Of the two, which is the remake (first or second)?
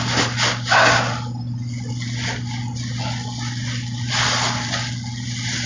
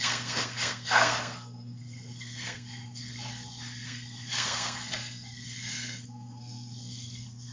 second